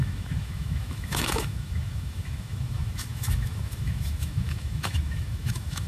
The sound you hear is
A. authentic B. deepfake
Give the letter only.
B